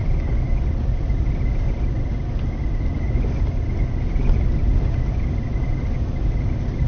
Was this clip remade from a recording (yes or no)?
no